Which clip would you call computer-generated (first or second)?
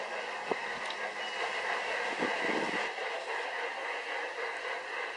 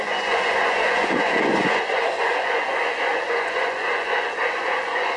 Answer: second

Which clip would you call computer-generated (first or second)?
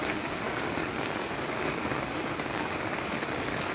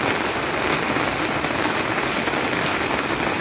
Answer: first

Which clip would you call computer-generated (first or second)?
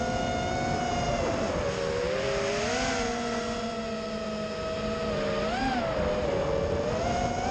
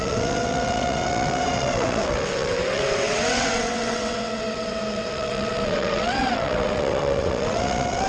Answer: second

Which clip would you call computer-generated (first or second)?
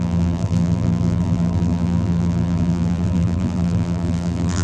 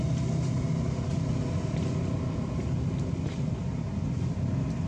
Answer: first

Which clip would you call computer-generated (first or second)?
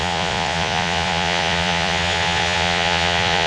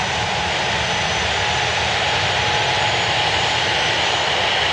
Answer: first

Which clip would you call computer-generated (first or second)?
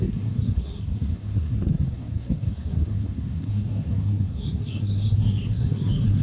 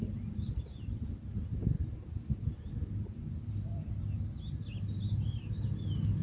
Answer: first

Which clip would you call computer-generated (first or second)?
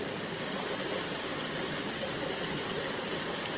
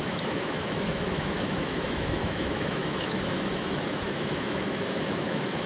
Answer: second